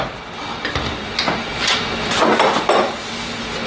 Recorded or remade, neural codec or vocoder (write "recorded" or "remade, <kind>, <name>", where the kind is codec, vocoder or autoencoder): recorded